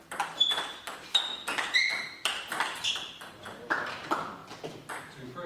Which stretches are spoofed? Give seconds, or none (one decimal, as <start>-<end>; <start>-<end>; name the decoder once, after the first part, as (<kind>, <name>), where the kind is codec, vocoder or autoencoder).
0.0-5.5 (vocoder, BigVGAN v2)